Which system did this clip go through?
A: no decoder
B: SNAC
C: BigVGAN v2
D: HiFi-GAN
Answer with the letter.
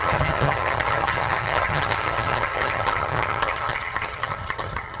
D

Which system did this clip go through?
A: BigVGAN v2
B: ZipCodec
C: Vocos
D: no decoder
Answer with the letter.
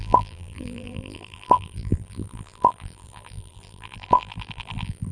A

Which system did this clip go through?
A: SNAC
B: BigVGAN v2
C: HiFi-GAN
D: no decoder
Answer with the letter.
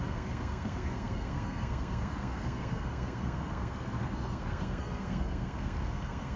A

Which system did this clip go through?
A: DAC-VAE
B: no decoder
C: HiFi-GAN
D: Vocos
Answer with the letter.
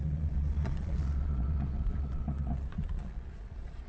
D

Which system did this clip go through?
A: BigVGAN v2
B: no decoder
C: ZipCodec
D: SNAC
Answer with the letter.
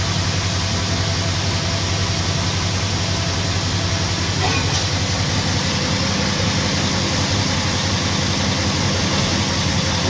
B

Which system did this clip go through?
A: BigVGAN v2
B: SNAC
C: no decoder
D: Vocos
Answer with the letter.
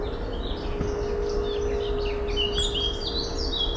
C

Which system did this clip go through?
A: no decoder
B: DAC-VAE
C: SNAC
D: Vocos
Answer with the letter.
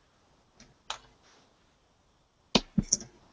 A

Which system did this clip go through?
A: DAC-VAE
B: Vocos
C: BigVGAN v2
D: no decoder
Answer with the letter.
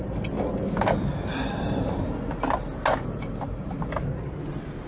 D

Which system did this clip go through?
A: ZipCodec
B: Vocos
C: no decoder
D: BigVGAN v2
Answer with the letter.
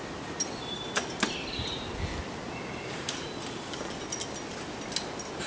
C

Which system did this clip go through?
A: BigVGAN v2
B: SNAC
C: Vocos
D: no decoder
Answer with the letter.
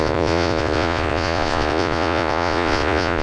C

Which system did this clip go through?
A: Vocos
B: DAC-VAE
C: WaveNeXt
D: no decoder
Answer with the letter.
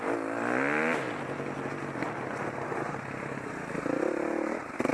D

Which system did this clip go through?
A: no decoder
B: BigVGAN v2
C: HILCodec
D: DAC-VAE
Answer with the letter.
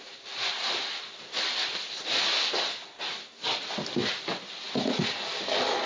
A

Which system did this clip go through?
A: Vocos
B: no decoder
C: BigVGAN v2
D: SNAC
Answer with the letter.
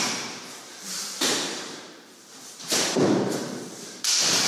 C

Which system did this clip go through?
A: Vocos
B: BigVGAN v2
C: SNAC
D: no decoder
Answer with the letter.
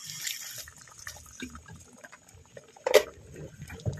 D